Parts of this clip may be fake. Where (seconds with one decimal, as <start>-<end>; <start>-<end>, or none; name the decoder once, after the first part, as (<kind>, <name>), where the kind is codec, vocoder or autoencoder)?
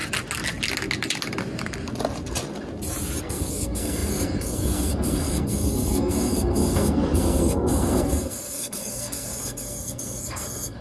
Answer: 3.2-10.8 (codec, SNAC)